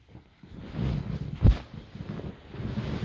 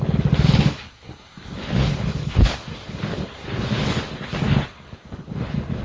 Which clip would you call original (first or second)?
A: first